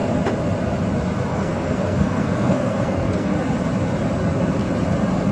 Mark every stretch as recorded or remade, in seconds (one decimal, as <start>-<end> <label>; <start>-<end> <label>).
0.0-1.3 recorded; 1.3-3.3 remade; 3.3-5.3 recorded